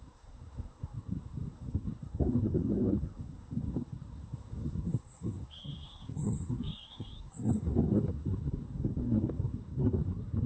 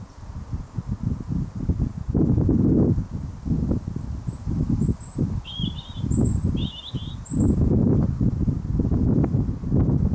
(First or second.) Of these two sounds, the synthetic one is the first